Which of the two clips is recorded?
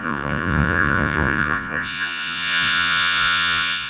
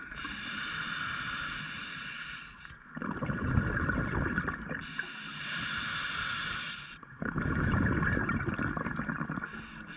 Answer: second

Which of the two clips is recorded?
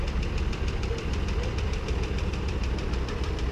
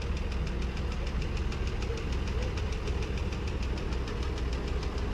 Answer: second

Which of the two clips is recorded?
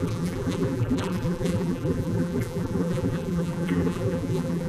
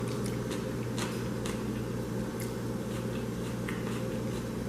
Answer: second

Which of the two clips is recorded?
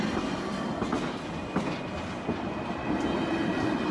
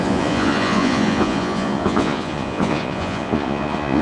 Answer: first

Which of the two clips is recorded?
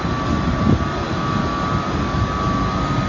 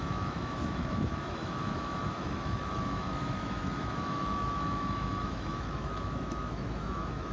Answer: first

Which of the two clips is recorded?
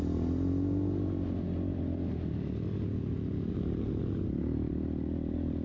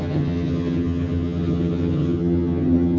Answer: first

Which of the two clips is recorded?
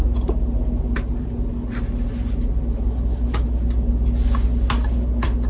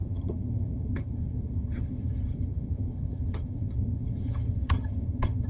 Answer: first